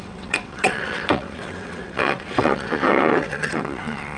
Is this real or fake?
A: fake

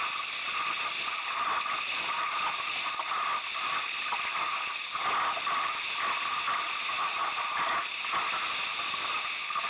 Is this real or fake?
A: real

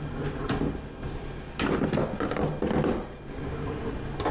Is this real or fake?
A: real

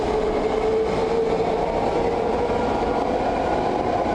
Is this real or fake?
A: real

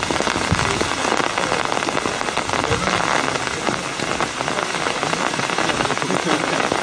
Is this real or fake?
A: real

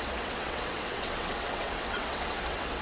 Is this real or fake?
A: fake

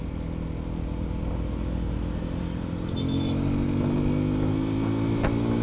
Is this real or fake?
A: real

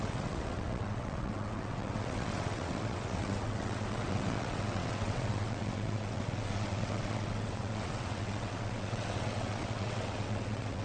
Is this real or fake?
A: fake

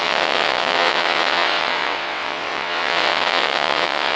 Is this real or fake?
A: fake